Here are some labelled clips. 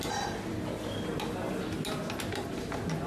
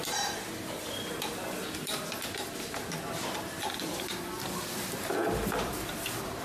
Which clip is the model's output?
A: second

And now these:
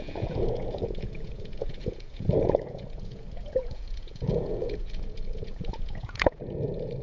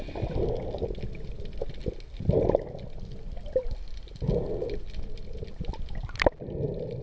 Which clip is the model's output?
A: first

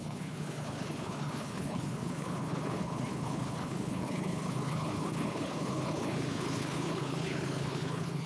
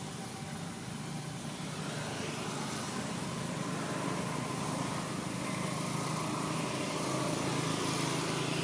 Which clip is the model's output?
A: first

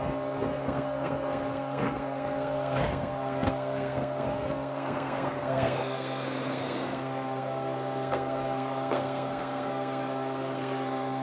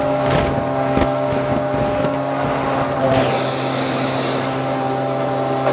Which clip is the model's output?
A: first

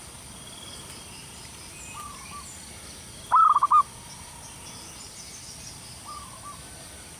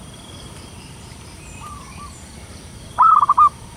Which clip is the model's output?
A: second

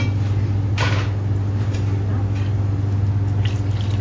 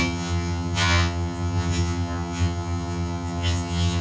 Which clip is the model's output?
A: second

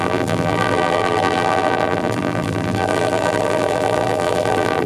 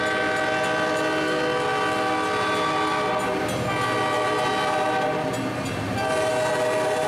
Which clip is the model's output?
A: first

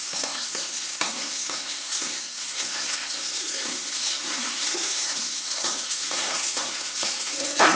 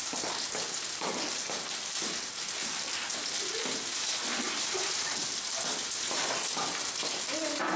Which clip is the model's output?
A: first